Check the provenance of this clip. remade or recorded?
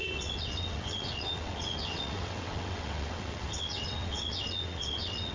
remade